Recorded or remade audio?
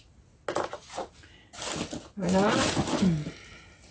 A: recorded